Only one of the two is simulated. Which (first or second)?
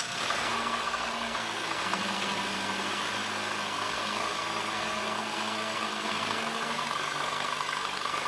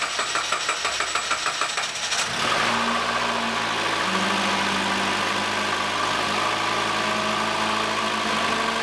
first